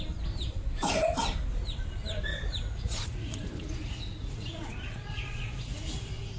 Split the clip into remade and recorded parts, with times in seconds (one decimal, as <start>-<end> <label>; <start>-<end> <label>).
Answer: 0.0-2.3 recorded; 2.3-6.4 remade